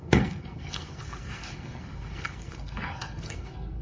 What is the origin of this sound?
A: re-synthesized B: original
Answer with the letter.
A